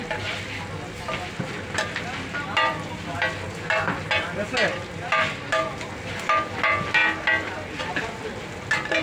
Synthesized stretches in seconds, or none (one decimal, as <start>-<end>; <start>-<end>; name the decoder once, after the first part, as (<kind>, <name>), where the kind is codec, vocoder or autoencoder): none